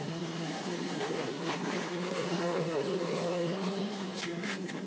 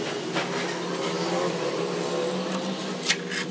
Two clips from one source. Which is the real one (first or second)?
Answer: second